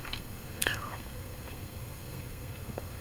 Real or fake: fake